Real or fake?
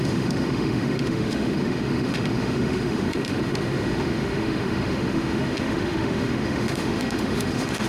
fake